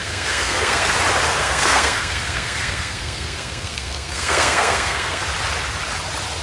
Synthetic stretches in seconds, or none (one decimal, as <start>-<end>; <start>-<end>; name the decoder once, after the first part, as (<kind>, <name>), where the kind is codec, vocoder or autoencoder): 0.0-0.9 (codec, SNAC); 1.4-5.2